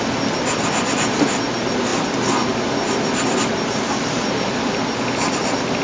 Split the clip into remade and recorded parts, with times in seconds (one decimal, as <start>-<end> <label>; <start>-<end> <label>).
0.0-5.8 recorded

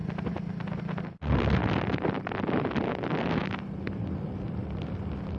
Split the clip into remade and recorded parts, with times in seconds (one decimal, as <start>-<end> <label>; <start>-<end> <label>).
0.0-5.4 recorded

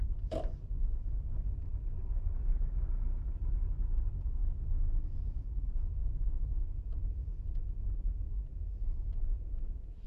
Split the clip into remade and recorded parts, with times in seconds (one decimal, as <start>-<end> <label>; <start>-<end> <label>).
0.0-10.1 recorded

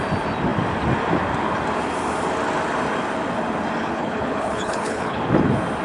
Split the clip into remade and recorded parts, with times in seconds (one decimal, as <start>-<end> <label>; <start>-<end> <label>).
0.0-3.8 recorded; 3.8-5.2 remade; 5.2-5.8 recorded

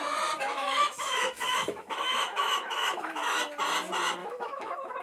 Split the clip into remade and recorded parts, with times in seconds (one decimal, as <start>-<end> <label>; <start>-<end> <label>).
0.0-0.4 recorded; 0.4-3.4 remade; 3.4-4.2 recorded; 4.2-5.0 remade

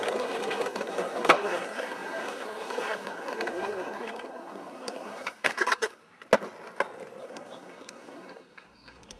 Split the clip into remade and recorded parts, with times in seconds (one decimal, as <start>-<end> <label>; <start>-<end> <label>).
0.0-6.0 remade; 6.0-7.2 recorded; 7.2-9.2 remade

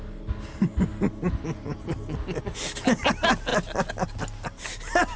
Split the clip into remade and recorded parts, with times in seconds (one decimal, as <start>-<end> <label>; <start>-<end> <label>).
0.0-5.2 recorded